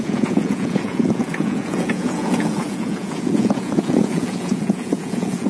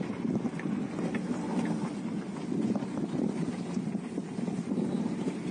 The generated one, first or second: first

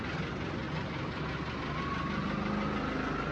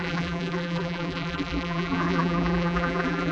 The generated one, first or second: second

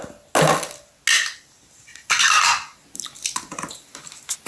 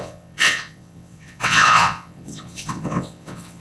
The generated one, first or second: second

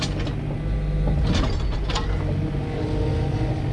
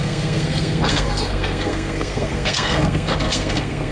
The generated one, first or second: second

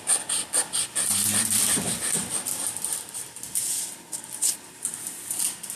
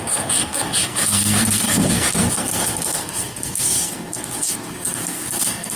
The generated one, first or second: second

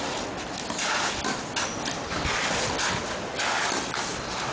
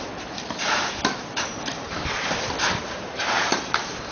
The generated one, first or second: second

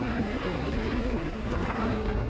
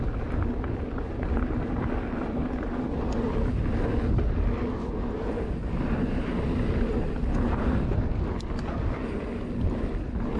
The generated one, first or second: first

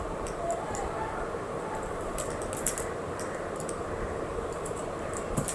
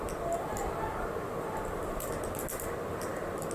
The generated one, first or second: first